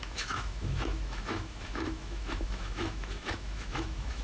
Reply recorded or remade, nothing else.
remade